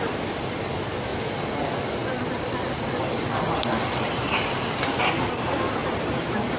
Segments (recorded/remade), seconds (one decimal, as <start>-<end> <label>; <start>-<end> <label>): 0.0-1.1 recorded; 1.1-5.1 remade; 5.1-5.8 recorded; 5.8-6.6 remade